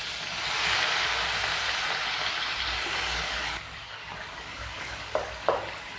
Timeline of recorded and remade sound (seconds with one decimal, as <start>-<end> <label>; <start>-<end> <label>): 0.0-2.9 recorded; 2.9-5.6 remade; 5.6-6.0 recorded